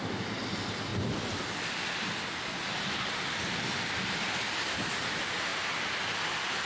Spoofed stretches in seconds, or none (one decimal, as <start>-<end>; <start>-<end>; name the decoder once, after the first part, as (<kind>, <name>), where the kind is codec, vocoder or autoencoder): 0.9-4.9 (vocoder, BigVGAN v2); 5.5-6.7